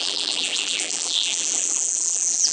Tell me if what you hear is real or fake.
fake